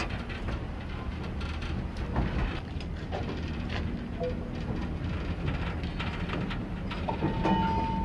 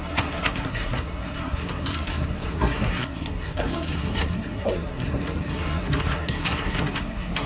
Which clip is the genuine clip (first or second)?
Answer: first